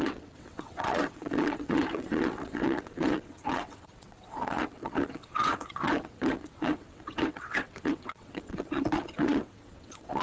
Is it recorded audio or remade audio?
remade